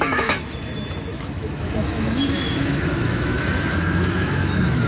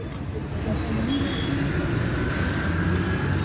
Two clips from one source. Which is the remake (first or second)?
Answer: first